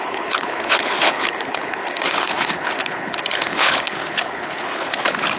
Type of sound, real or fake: fake